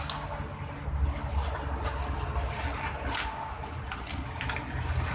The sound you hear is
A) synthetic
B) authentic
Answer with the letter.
B